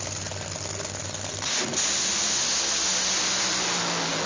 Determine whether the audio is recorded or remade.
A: recorded